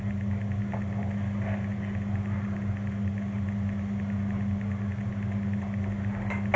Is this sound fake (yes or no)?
no